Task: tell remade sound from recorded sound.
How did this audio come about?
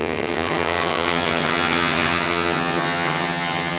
remade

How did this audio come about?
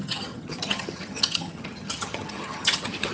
remade